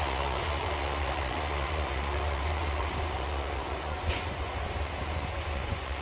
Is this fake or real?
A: fake